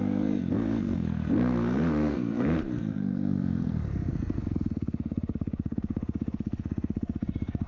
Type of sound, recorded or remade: remade